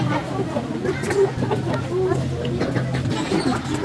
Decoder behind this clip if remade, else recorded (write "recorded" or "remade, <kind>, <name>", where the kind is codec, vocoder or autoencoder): recorded